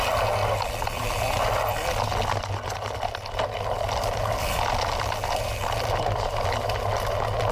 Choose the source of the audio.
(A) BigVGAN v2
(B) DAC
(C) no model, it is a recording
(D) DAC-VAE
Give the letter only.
C